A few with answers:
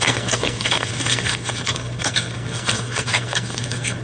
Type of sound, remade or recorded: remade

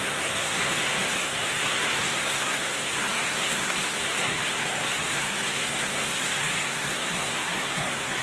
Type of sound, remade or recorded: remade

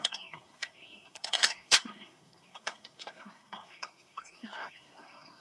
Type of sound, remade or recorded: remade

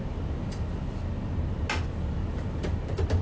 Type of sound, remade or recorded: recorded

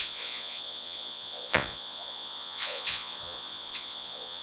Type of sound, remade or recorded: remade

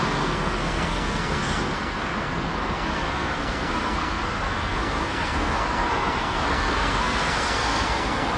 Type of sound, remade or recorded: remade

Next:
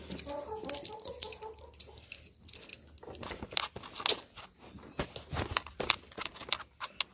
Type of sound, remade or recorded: recorded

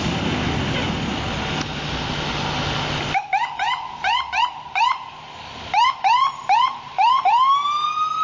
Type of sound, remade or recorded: recorded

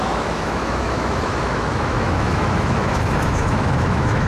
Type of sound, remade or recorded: remade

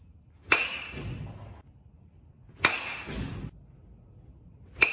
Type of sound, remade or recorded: recorded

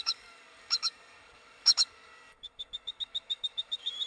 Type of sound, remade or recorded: remade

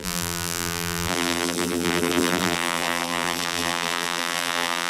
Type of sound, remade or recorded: remade